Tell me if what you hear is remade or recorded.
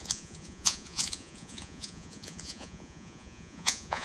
remade